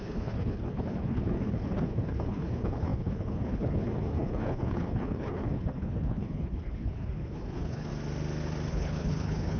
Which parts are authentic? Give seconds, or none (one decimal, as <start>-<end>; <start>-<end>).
7.9-8.7